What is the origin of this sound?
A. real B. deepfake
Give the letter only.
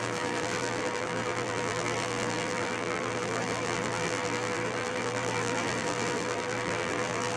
B